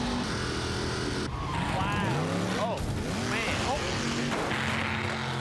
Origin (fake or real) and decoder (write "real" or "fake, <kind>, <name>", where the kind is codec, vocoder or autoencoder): real